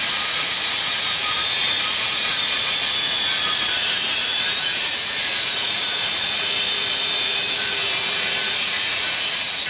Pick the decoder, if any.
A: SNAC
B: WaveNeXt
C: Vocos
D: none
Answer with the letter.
C